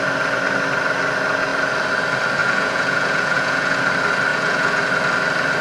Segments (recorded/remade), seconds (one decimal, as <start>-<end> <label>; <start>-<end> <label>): 0.0-2.4 recorded; 2.4-3.8 remade; 3.8-4.3 recorded; 4.3-4.8 remade; 4.8-5.6 recorded